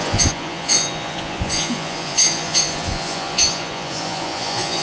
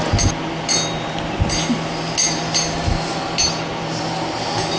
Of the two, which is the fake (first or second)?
first